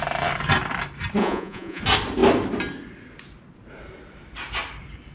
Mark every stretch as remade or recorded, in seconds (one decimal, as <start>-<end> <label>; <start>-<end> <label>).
0.0-1.2 recorded; 1.2-1.8 remade; 1.8-5.1 recorded